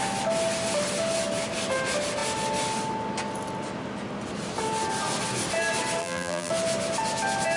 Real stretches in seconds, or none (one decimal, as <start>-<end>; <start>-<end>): 0.0-6.0; 6.5-7.6